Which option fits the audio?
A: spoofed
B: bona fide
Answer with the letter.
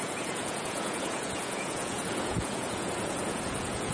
A